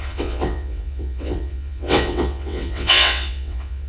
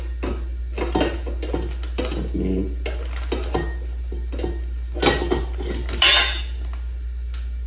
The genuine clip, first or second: second